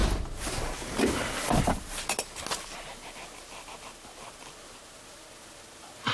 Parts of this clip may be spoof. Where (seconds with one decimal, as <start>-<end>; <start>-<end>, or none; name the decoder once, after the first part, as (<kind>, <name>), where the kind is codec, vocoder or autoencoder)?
none